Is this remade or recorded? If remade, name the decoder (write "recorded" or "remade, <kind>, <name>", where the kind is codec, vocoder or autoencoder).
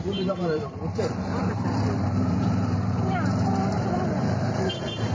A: remade, vocoder, BigVGAN v2